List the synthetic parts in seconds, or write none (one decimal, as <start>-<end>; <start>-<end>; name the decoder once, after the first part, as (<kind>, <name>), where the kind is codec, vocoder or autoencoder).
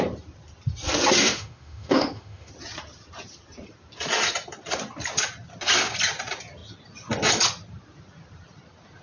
1.2-2.5 (autoencoder, DAC-VAE)